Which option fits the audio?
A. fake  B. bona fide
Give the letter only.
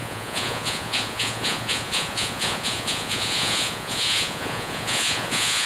A